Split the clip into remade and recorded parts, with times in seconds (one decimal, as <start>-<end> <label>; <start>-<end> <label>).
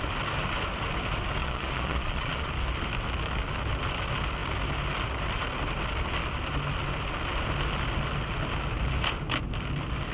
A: 0.0-1.4 recorded; 1.4-2.5 remade; 2.5-10.1 recorded